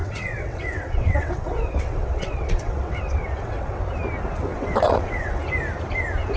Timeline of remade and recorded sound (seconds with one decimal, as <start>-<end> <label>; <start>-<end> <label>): 0.0-3.8 remade; 3.8-4.5 recorded; 4.5-5.4 remade; 5.4-6.4 recorded